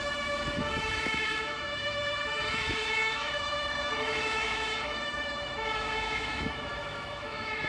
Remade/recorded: remade